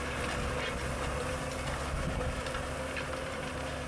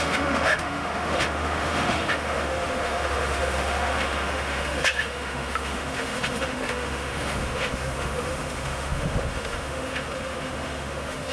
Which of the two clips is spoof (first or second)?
second